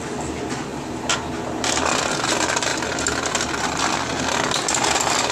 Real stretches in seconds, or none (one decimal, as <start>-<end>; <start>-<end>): 0.0-5.3